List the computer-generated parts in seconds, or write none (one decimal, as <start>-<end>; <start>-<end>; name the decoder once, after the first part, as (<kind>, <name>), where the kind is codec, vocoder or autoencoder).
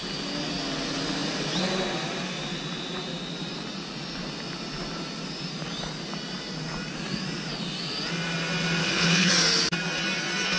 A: 8.8-9.3 (codec, HILCodec)